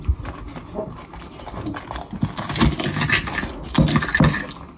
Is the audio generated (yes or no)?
no